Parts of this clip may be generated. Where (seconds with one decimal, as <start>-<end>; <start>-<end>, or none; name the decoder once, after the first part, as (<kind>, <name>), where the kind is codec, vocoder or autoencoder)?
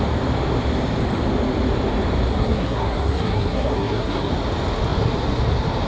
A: 2.3-4.3 (codec, SNAC)